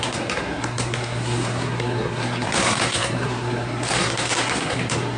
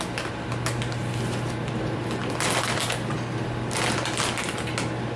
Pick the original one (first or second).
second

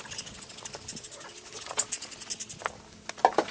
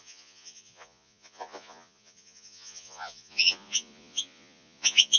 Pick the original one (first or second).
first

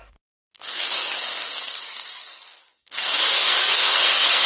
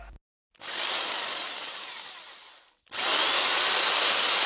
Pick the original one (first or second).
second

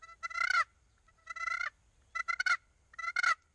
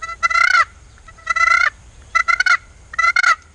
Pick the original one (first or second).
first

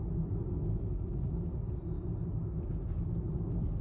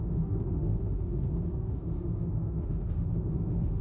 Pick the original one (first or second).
first